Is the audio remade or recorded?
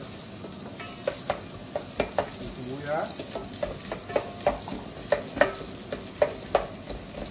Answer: recorded